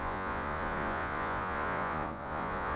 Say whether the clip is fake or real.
fake